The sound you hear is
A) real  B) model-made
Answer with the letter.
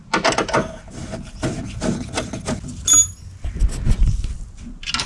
A